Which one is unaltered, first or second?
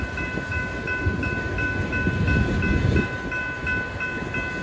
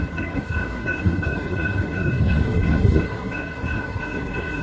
first